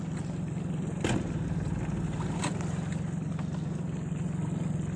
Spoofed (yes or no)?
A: no